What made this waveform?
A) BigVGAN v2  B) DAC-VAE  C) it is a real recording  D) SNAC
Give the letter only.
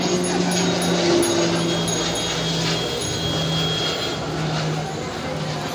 C